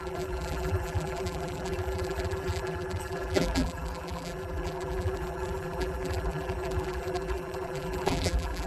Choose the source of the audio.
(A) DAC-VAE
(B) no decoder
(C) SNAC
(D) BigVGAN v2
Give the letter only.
D